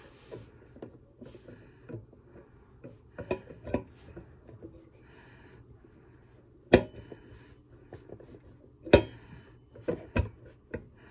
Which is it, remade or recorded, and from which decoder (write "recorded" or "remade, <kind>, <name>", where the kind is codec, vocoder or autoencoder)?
recorded